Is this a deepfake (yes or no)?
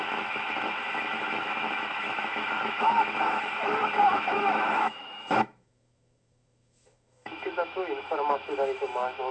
yes